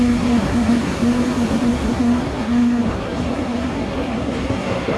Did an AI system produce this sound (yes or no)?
yes